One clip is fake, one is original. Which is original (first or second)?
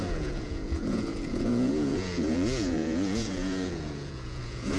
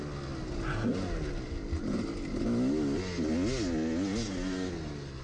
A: second